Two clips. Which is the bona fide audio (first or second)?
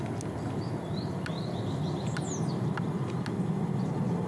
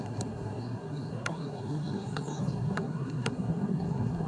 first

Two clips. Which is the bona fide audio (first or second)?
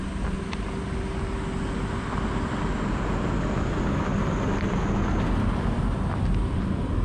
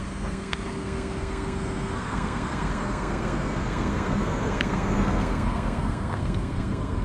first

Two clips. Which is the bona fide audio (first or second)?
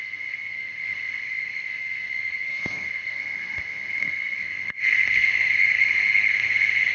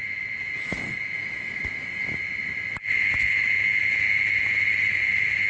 second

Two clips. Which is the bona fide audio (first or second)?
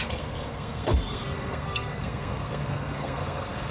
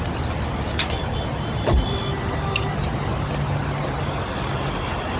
second